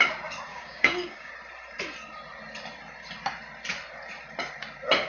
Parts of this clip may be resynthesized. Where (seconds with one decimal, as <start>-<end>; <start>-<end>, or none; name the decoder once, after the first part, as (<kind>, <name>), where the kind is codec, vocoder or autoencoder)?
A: 0.5-1.3 (codec, DAC)